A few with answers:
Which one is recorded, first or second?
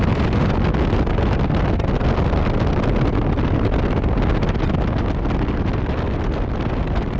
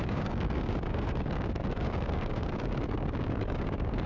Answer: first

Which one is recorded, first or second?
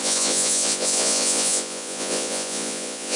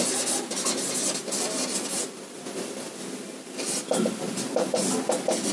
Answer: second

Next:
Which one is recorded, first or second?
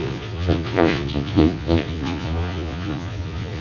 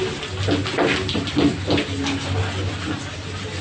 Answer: second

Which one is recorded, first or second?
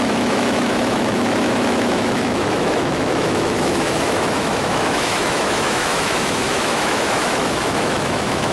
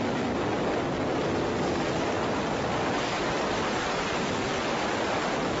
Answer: second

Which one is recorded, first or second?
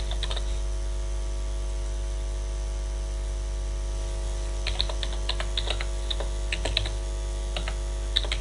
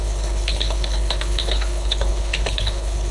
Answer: first